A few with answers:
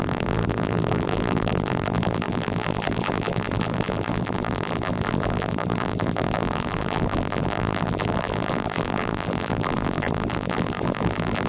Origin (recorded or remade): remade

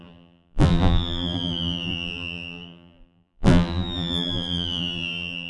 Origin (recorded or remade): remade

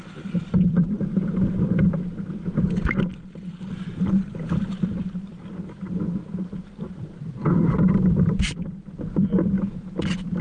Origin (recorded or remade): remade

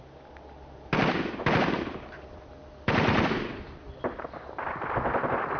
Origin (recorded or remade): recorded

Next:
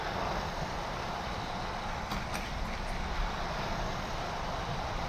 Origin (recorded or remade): recorded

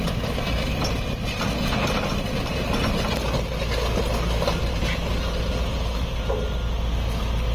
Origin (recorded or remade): recorded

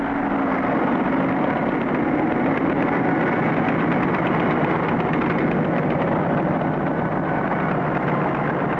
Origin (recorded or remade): recorded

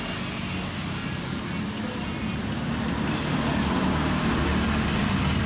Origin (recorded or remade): recorded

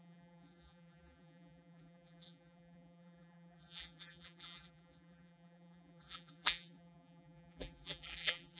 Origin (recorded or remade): remade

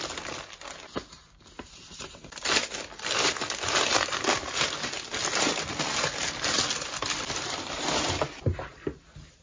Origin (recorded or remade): recorded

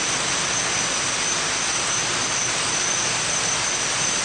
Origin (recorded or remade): recorded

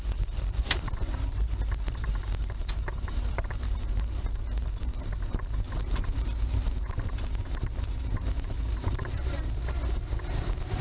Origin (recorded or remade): remade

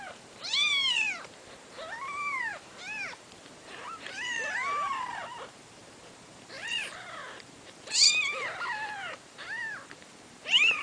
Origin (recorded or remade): remade